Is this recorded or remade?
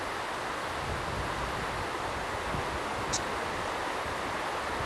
recorded